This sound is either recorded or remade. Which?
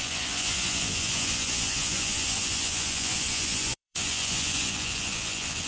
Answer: remade